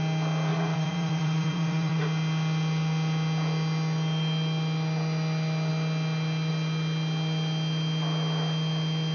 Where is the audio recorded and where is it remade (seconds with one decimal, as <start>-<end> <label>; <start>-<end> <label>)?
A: 0.0-0.5 recorded; 0.5-2.0 remade; 2.0-9.1 recorded